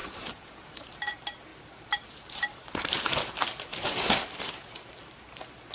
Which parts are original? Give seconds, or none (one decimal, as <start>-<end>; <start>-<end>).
1.1-1.5; 4.9-5.7